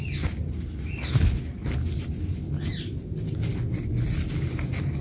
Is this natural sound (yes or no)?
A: yes